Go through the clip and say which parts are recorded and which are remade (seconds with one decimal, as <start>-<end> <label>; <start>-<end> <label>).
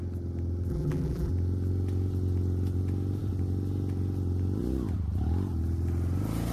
0.0-0.7 recorded; 0.7-1.3 remade; 1.3-6.5 recorded